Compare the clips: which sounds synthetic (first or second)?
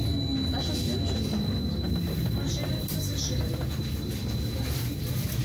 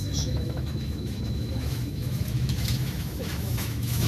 second